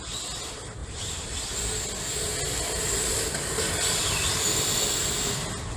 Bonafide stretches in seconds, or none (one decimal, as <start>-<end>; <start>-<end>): 0.0-0.8; 1.6-5.8